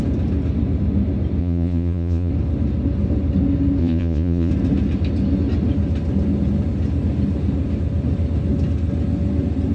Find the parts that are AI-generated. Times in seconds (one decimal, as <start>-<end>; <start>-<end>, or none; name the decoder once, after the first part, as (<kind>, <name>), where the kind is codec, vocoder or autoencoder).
1.4-2.3 (vocoder, Vocos); 3.8-4.5